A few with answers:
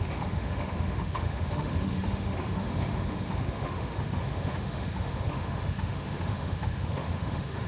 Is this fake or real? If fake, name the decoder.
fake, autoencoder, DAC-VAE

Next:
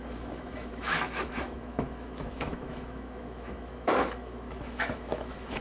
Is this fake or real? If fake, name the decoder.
fake, autoencoder, DAC-VAE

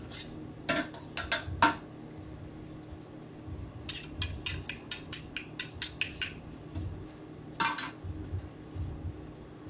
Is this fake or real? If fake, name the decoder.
real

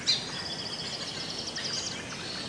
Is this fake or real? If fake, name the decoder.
real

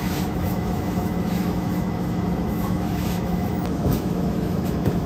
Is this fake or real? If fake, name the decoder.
fake, autoencoder, DAC-VAE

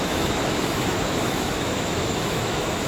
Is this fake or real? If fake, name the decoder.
fake, autoencoder, DAC-VAE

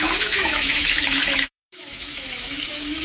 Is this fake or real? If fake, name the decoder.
fake, autoencoder, DAC-VAE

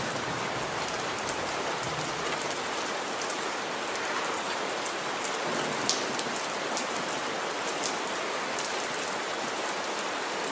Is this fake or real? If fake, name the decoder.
real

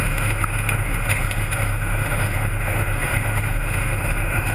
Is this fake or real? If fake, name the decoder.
fake, autoencoder, DAC-VAE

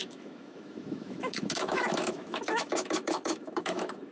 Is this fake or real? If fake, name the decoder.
fake, autoencoder, DAC-VAE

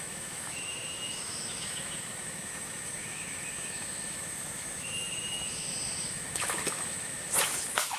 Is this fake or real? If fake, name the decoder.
fake, autoencoder, DAC-VAE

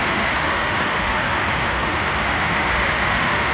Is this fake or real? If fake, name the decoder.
fake, autoencoder, DAC-VAE